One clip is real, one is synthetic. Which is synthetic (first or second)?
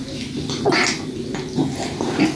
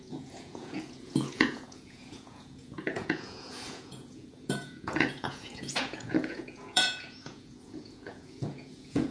second